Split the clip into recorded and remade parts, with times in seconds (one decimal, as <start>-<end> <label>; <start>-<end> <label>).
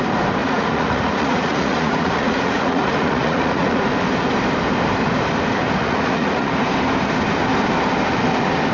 0.0-0.4 recorded; 0.4-3.8 remade; 3.8-5.8 recorded; 5.8-6.5 remade; 6.5-8.7 recorded